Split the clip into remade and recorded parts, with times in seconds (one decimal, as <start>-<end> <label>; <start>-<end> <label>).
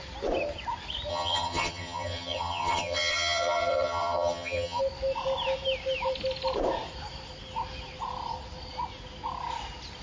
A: 0.0-1.1 recorded; 1.1-4.8 remade; 4.8-10.0 recorded